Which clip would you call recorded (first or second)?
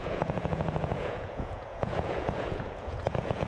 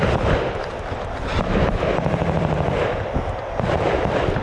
second